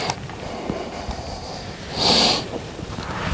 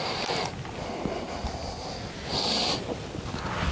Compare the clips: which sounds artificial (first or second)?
first